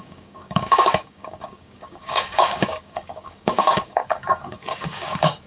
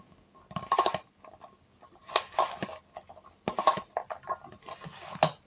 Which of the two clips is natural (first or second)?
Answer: second